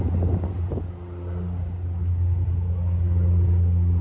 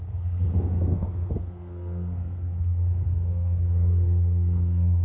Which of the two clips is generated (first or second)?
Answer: second